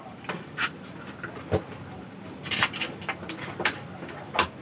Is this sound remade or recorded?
recorded